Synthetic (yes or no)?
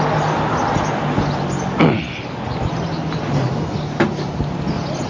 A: no